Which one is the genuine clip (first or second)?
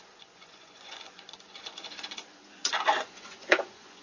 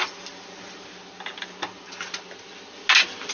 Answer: second